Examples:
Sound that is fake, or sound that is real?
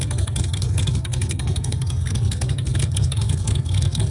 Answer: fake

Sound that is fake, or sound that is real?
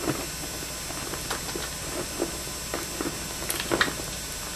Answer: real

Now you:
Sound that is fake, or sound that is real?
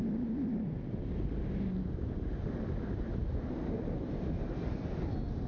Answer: real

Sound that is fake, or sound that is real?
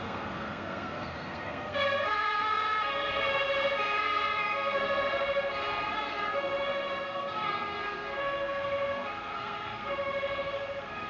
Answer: fake